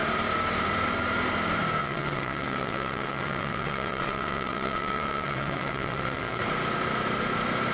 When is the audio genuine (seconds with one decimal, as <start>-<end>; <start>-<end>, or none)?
0.0-1.8; 6.4-7.7